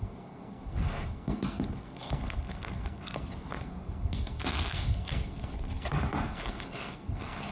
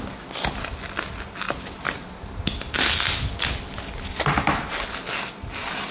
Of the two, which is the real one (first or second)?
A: second